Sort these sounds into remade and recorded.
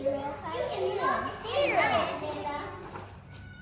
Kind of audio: recorded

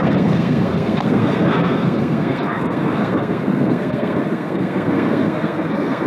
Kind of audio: remade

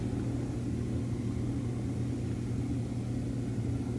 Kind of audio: recorded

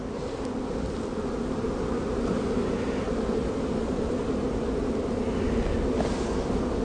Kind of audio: recorded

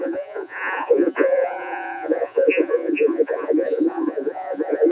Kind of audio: remade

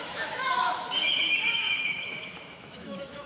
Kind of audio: remade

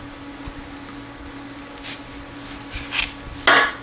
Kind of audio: recorded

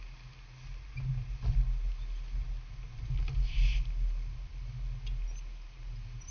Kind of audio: recorded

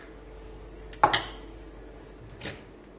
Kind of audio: recorded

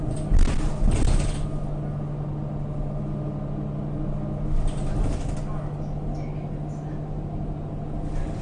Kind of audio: recorded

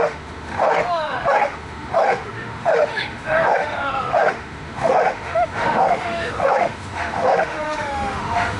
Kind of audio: remade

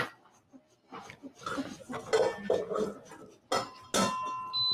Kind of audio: recorded